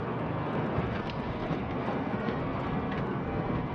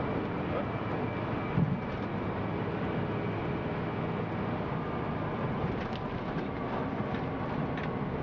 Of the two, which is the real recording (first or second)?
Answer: second